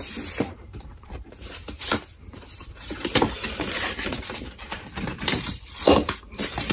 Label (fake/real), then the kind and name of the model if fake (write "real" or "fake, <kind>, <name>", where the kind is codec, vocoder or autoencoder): fake, vocoder, BigVGAN v2